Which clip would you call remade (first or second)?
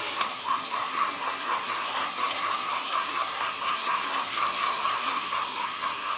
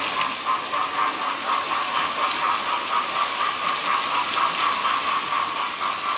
first